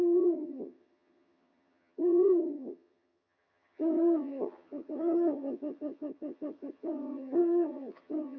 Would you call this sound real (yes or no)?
no